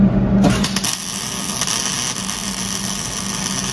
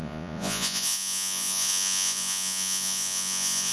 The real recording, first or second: first